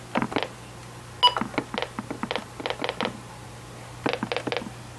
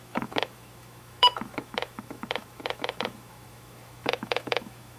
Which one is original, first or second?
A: first